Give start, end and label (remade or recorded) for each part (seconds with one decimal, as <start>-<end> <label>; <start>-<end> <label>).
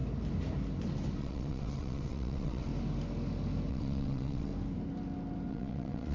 0.0-1.2 recorded; 1.2-2.7 remade; 2.7-3.7 recorded; 3.7-4.5 remade; 4.5-5.5 recorded; 5.5-6.1 remade